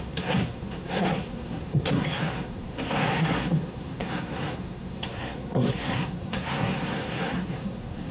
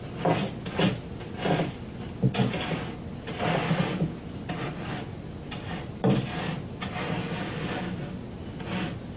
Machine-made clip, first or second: first